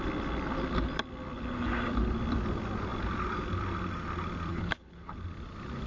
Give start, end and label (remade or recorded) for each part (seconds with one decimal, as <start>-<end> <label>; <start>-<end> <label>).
0.0-4.5 recorded; 4.5-5.1 remade; 5.1-5.9 recorded